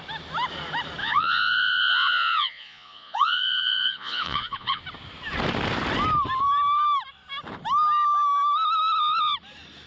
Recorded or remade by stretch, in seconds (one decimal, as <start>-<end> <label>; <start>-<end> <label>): 0.0-1.0 recorded; 1.0-4.8 remade; 4.8-9.9 recorded